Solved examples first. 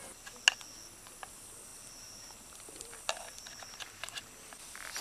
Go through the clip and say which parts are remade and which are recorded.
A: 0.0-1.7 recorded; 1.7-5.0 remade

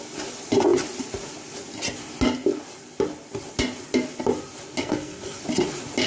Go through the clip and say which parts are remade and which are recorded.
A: 0.0-4.8 recorded; 4.8-5.4 remade; 5.4-6.1 recorded

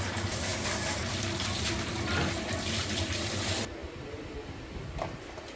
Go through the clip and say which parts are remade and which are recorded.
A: 0.0-0.5 recorded; 0.5-3.1 remade; 3.1-5.6 recorded

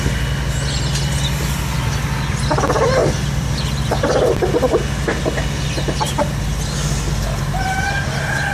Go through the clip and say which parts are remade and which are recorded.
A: 0.0-8.5 recorded

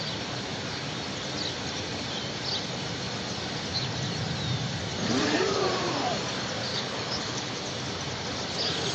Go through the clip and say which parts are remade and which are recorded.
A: 0.0-6.7 recorded; 6.7-7.6 remade; 7.6-8.9 recorded